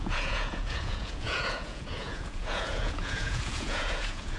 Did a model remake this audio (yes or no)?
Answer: yes